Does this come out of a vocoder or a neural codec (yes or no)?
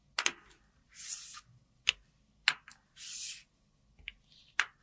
no